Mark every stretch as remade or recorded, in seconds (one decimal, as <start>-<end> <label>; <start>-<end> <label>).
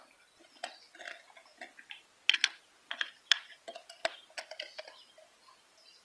0.0-6.0 recorded